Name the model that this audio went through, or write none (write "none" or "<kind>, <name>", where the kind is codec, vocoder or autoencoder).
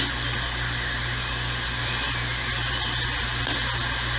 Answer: none